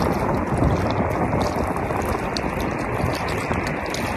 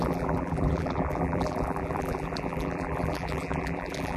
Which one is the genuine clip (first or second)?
first